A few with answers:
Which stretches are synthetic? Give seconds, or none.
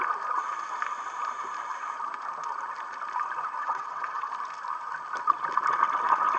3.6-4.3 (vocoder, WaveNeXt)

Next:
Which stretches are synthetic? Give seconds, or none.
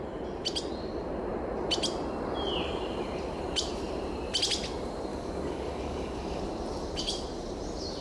5.1-6.4 (codec, DAC)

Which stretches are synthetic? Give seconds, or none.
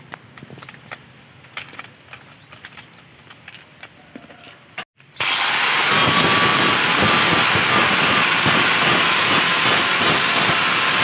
none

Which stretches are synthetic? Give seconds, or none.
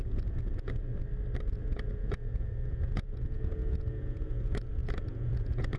0.0-0.8 (vocoder, Vocos); 1.5-5.8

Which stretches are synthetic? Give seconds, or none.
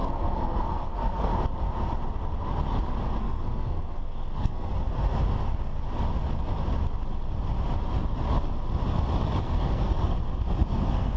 0.0-1.3 (codec, SNAC); 3.2-4.7; 9.4-11.2